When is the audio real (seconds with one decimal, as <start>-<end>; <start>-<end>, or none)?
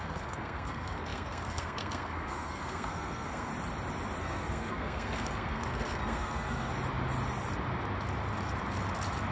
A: 3.5-4.2; 6.7-9.3